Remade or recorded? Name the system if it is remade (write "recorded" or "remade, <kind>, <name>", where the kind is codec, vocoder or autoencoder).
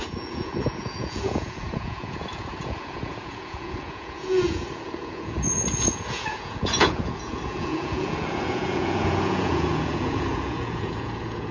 remade, vocoder, Vocos